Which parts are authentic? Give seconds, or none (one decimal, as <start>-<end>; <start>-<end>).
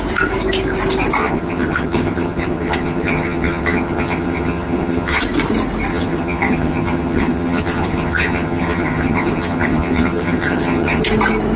0.0-1.2; 5.2-5.9; 11.0-11.6